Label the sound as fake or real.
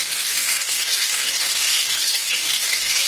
fake